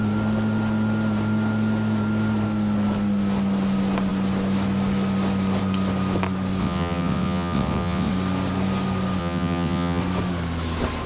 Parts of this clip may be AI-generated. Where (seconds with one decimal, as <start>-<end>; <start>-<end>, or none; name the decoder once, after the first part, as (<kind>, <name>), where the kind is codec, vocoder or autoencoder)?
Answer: 6.6-8.1 (vocoder, WaveNeXt); 9.2-10.0